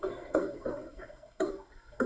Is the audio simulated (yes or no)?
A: yes